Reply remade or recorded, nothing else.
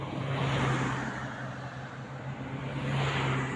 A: recorded